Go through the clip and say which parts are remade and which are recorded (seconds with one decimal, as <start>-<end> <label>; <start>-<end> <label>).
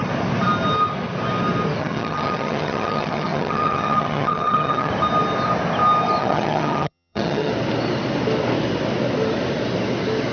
0.0-1.8 recorded; 1.8-4.9 remade; 4.9-6.2 recorded; 6.2-7.5 remade; 7.5-10.3 recorded